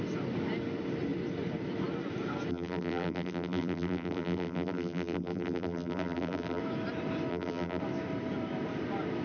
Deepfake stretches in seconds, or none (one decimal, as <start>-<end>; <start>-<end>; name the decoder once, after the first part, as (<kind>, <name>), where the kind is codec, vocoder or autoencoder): 2.5-6.6 (vocoder, BigVGAN v2); 7.3-7.8